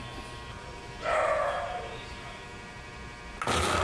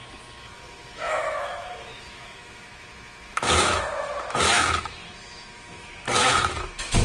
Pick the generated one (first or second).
second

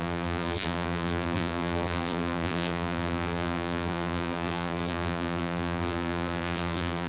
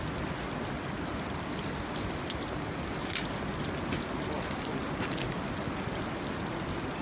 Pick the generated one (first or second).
first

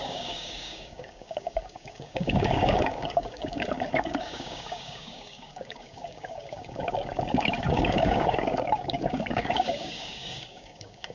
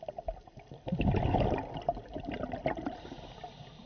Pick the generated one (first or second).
first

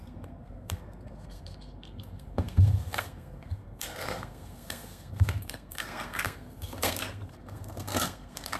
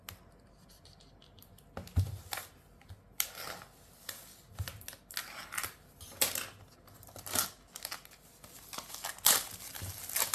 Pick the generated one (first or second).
first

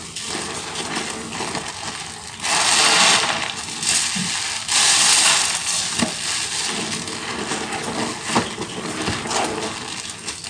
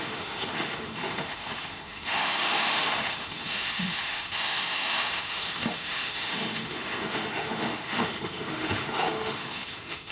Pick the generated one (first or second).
second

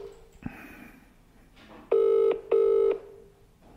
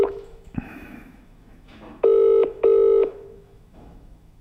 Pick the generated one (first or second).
second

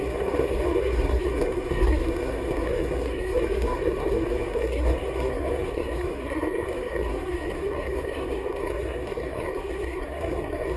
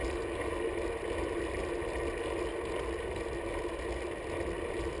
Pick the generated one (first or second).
first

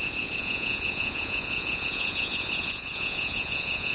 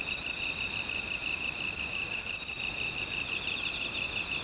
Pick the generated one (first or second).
first